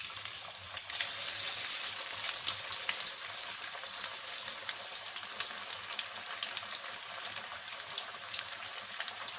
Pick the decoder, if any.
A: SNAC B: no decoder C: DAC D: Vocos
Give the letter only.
B